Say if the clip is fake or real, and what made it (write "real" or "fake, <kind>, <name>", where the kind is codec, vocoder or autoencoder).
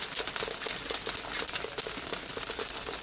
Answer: real